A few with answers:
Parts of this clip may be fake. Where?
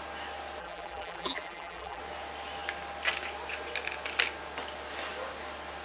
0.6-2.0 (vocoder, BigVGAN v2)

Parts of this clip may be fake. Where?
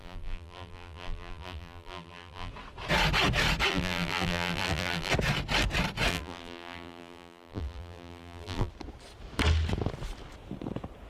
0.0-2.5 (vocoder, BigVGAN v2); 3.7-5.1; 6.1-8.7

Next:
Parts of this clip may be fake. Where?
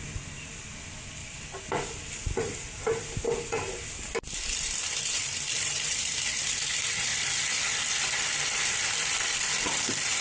0.0-7.1 (vocoder, BigVGAN v2); 7.7-10.2